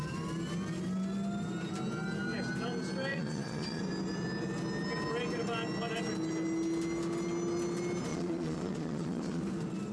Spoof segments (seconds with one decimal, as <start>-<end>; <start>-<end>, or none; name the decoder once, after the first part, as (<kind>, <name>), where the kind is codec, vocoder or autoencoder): 3.1-3.8 (vocoder, Vocos); 8.1-9.4